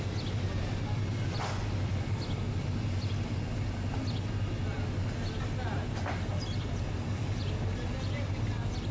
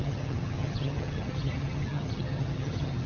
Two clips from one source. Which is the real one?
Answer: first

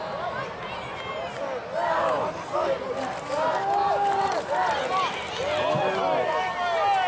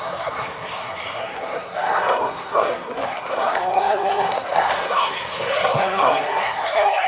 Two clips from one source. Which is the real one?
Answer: first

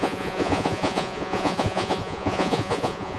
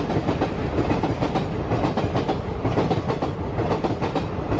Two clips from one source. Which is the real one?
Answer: second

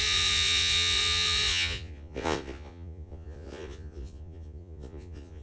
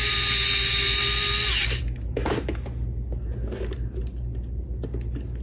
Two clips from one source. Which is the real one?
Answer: second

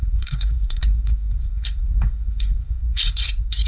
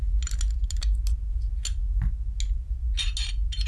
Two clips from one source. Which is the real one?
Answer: second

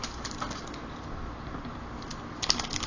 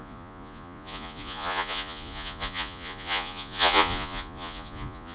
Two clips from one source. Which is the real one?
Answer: first